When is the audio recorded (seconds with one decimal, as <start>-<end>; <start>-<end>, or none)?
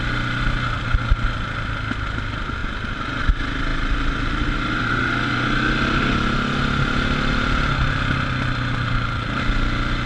0.0-10.1